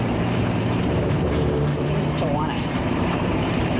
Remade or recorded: remade